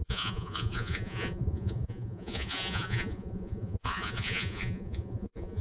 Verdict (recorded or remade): remade